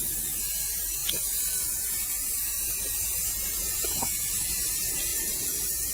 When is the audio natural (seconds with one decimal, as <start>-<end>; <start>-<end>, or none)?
0.0-1.0; 4.5-5.1